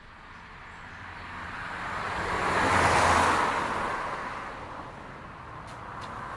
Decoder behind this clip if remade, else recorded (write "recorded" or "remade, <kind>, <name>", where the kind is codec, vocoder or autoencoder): recorded